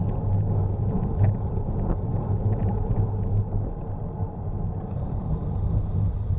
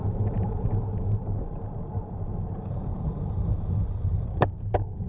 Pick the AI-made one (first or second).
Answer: second